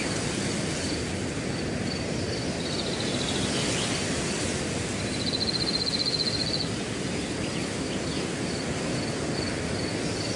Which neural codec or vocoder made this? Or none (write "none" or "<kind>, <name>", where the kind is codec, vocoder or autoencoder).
none